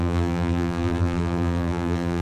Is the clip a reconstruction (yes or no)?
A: yes